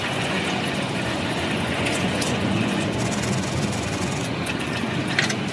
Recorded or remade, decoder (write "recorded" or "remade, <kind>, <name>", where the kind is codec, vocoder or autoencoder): remade, vocoder, Vocos